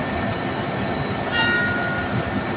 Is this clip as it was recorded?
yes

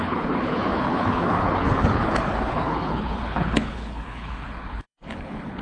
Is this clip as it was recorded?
no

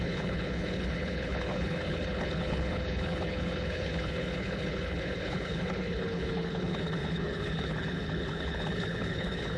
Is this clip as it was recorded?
no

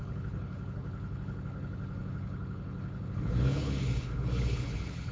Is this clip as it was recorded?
no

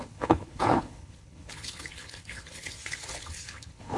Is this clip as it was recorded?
no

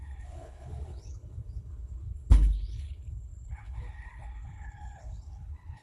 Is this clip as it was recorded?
no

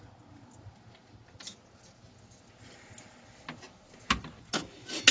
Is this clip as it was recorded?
yes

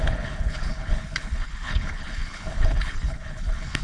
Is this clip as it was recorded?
no